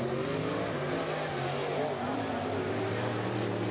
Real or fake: real